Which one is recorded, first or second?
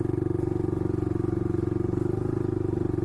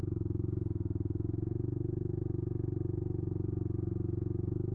first